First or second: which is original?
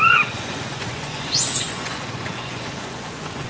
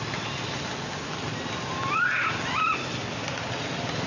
second